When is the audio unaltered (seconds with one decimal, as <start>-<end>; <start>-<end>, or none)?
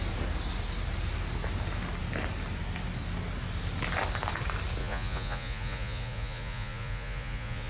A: 0.0-4.8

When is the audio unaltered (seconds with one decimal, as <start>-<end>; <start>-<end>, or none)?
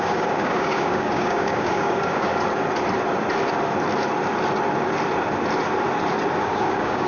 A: 2.3-6.4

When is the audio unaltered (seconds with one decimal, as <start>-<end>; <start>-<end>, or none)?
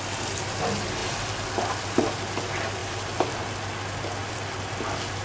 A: 0.0-2.8; 3.3-4.2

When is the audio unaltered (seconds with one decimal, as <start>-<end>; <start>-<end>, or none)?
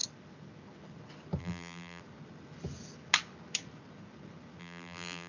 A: 0.0-1.4; 2.0-4.6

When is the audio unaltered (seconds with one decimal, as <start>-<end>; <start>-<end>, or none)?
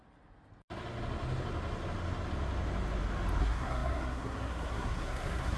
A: 0.0-3.4